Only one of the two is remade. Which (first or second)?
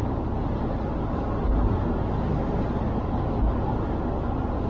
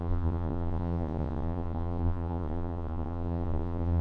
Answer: second